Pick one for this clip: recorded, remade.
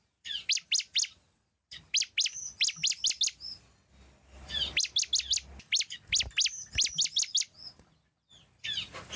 recorded